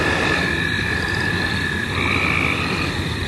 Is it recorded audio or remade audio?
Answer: recorded